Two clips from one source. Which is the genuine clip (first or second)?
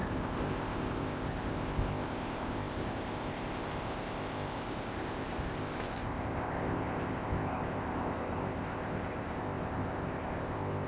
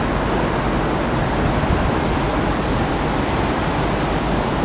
second